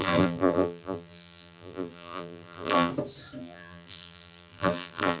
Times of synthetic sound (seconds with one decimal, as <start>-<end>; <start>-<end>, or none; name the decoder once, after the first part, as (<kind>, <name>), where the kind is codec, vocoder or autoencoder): 0.0-2.9 (vocoder, BigVGAN v2); 3.4-5.2

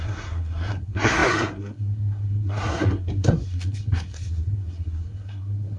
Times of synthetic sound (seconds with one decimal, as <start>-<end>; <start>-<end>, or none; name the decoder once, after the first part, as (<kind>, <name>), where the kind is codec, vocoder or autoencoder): 0.0-5.8 (codec, SNAC)